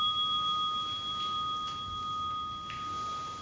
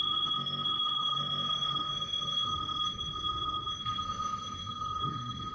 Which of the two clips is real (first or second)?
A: first